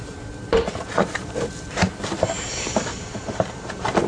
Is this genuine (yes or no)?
no